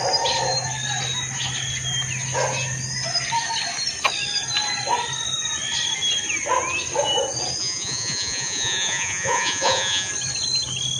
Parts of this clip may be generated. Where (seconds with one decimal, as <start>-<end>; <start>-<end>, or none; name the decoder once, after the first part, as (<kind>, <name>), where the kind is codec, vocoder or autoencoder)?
7.6-10.1 (vocoder, Vocos)